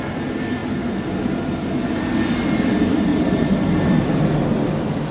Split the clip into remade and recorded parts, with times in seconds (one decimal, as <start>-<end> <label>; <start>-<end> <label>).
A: 0.0-3.1 recorded; 3.1-3.7 remade; 3.7-5.1 recorded